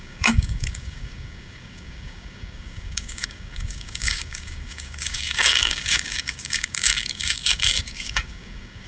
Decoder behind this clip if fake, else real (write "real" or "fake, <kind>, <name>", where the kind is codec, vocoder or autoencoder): fake, codec, DAC